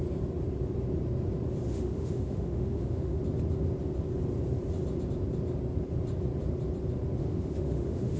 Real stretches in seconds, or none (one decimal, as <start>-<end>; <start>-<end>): 0.0-1.7; 3.2-7.2